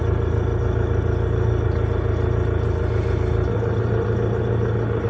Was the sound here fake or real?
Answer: real